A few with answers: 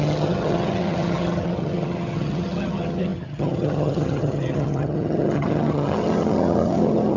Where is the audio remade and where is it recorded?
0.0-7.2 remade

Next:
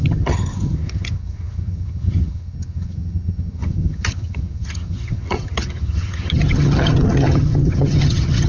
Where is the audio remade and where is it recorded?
0.0-8.5 remade

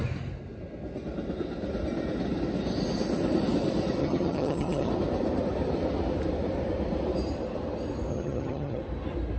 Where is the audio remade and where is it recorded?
0.0-4.0 recorded; 4.0-4.9 remade; 4.9-8.1 recorded; 8.1-8.8 remade; 8.8-9.4 recorded

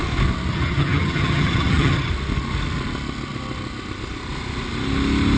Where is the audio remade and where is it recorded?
0.0-0.5 recorded; 0.5-2.1 remade; 2.1-5.4 recorded

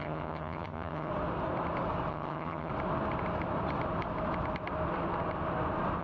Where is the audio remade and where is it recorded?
0.0-1.1 remade; 1.1-2.1 recorded; 2.1-2.7 remade; 2.7-6.0 recorded

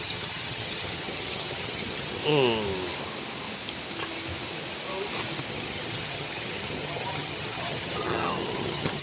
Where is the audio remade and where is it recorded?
0.0-2.2 remade; 2.2-5.5 recorded; 5.5-9.0 remade